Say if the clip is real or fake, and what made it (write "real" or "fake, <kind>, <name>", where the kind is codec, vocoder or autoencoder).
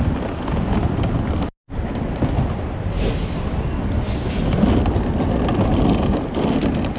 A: real